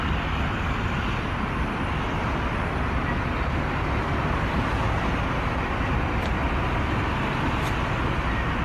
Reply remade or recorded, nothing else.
recorded